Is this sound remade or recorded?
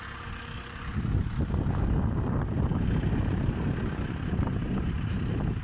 recorded